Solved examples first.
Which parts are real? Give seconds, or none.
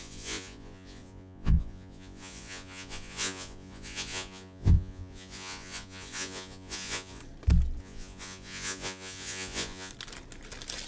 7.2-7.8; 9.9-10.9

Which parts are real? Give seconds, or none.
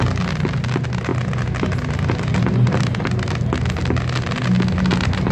0.0-5.3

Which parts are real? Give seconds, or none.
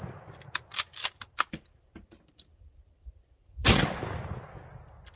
0.0-0.9; 3.9-5.2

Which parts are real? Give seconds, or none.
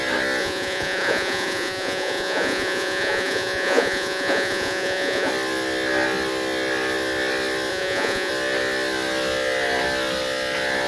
0.0-0.4; 5.3-7.7; 8.3-10.9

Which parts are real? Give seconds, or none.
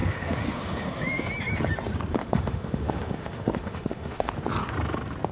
1.3-2.2; 4.3-5.3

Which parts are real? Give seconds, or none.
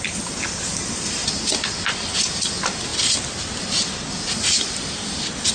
0.0-5.5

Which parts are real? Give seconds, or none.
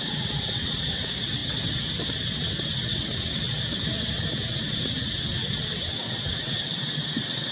none